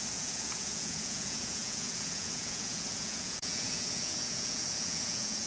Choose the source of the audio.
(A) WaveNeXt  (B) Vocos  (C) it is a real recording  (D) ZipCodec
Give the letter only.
B